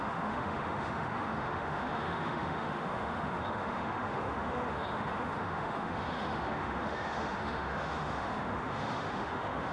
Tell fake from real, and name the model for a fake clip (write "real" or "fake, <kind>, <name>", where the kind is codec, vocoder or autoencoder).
fake, autoencoder, DAC-VAE